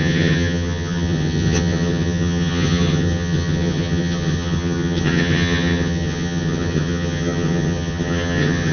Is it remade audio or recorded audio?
remade